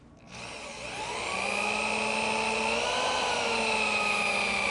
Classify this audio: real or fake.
real